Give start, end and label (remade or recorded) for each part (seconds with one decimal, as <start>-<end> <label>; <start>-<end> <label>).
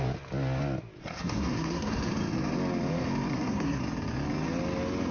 0.0-1.0 recorded; 1.0-2.1 remade; 2.1-3.3 recorded; 3.3-3.8 remade; 3.8-5.1 recorded